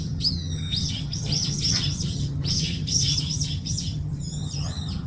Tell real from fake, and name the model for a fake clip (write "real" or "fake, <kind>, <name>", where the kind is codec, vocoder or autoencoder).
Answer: fake, vocoder, HiFi-GAN